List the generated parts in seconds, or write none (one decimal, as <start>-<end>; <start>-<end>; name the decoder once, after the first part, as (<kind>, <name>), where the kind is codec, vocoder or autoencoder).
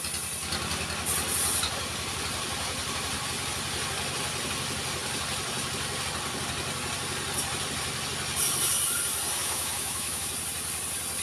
9.4-10.3 (autoencoder, DAC-VAE)